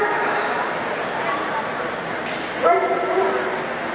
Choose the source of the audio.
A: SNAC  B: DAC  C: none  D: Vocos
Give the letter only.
C